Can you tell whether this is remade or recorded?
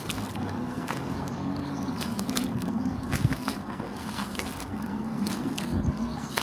remade